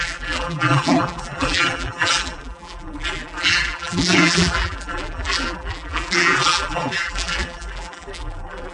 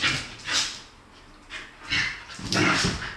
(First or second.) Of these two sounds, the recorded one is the second